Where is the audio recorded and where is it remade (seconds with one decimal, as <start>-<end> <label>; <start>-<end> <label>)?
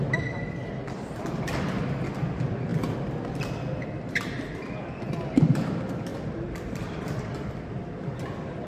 0.0-6.1 recorded; 6.1-8.7 remade